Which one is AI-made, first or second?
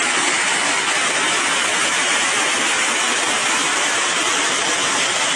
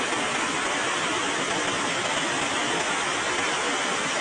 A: first